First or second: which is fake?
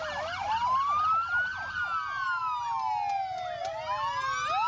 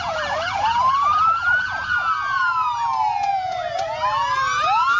second